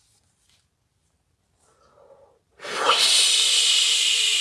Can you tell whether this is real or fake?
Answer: real